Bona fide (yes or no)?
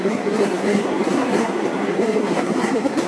no